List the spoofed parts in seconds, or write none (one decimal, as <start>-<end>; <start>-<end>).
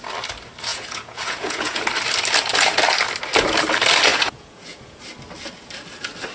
0.7-1.8; 4.1-5.0